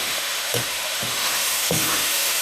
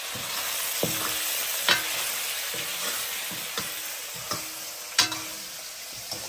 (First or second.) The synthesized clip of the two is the first